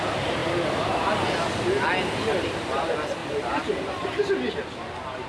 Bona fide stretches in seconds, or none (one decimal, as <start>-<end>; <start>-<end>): 0.0-3.2; 4.5-5.3